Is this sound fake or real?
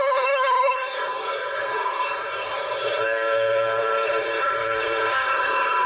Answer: fake